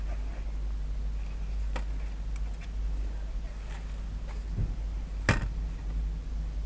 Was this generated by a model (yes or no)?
no